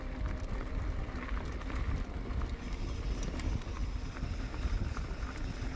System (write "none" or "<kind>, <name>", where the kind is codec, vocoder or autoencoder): none